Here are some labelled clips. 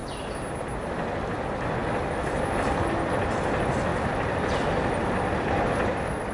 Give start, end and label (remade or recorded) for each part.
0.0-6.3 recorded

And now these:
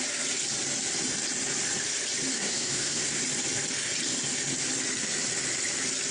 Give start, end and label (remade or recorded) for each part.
0.0-2.3 recorded; 2.3-3.2 remade; 3.2-6.1 recorded

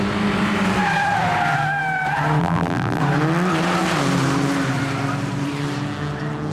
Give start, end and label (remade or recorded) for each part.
0.0-2.4 recorded; 2.4-3.0 remade; 3.0-6.5 recorded